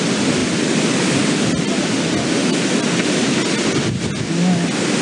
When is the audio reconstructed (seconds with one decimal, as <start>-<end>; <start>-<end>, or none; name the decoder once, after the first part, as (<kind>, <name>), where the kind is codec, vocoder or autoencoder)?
none